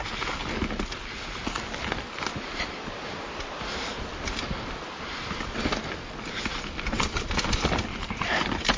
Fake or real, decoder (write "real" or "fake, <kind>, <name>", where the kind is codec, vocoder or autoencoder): real